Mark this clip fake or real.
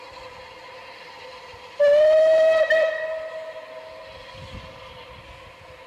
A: real